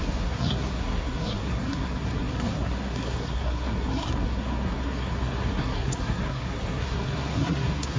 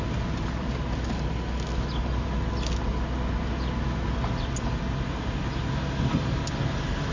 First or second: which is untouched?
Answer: second